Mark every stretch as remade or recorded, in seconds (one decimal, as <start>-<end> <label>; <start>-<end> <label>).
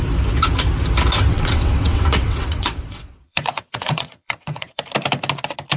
0.0-1.3 recorded; 1.3-4.8 remade; 4.8-5.8 recorded